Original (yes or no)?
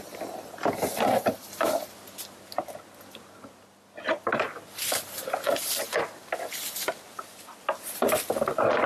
yes